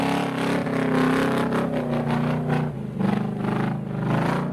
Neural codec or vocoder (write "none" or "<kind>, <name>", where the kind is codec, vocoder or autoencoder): none